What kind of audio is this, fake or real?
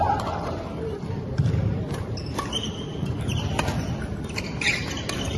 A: real